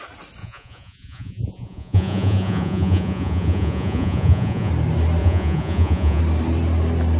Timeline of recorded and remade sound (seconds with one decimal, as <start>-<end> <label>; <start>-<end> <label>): 0.0-0.4 recorded; 0.4-4.7 remade; 4.7-5.2 recorded; 5.2-6.2 remade; 6.2-7.2 recorded